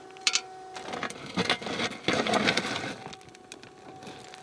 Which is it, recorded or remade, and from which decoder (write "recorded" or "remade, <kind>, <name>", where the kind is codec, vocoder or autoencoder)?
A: recorded